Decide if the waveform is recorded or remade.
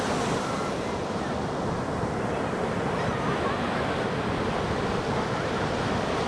recorded